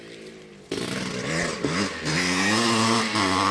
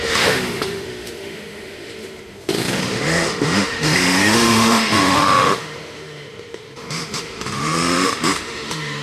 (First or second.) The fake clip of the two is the second